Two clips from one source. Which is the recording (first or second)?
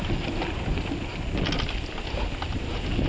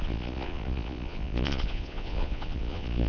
first